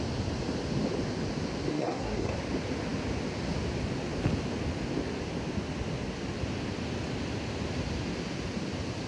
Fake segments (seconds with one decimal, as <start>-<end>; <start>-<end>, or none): 1.7-2.3

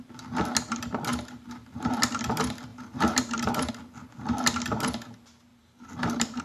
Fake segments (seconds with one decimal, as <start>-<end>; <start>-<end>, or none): 1.1-2.0; 2.7-3.7; 5.5-6.4